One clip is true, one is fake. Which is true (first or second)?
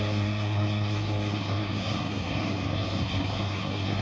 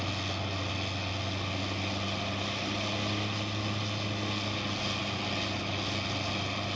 second